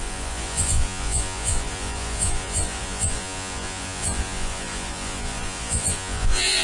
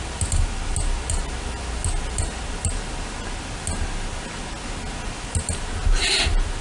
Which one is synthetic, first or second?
first